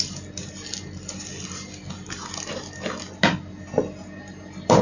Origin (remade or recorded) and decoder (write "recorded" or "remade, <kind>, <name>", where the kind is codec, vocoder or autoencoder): recorded